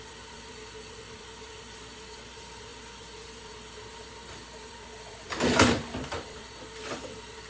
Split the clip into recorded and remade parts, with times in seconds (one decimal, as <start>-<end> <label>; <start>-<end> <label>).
0.0-7.5 remade